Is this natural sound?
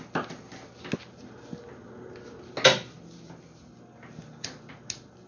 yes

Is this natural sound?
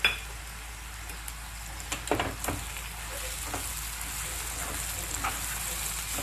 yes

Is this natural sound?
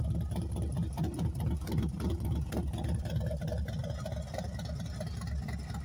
yes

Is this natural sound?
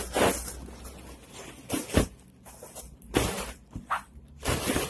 yes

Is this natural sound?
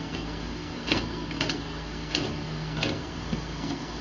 no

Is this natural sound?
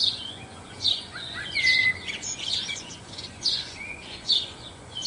no